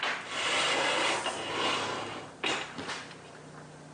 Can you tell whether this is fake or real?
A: real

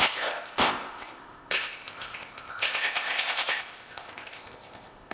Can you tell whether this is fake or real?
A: fake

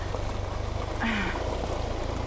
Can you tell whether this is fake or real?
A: real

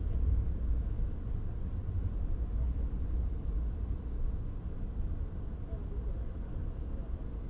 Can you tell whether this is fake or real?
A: real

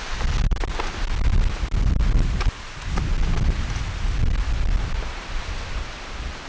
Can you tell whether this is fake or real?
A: real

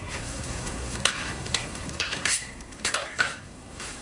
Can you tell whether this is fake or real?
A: fake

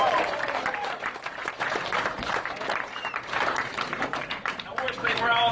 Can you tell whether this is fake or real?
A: fake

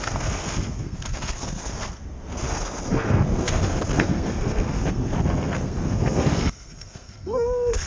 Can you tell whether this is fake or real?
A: fake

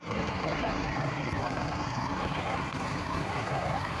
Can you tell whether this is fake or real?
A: fake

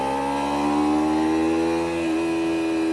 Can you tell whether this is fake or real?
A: real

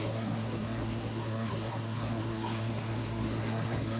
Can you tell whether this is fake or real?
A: fake